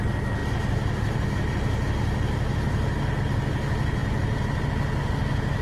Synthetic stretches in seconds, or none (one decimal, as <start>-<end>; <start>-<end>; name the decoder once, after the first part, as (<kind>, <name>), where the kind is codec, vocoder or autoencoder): none